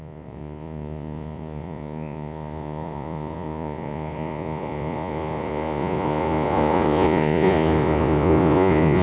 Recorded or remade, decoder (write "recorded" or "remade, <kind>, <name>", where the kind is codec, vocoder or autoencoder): remade, vocoder, Vocos